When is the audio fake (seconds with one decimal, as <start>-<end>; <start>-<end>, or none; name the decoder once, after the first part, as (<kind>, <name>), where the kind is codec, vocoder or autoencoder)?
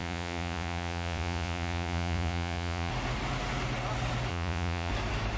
0.0-2.9 (vocoder, Vocos); 4.3-4.9